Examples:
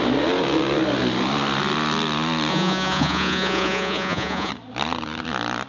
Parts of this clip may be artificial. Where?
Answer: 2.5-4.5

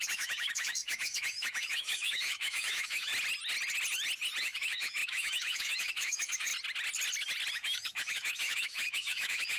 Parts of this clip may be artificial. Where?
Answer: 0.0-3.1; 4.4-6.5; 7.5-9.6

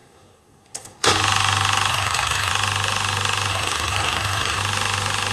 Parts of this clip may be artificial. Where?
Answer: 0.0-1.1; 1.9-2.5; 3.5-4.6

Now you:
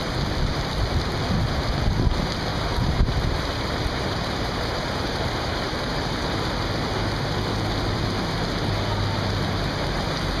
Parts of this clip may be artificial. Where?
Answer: 2.5-6.9